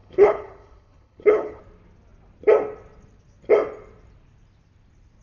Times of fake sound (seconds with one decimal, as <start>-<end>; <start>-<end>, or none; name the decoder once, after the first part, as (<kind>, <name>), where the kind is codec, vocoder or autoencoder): 0.0-1.6 (codec, HILCodec)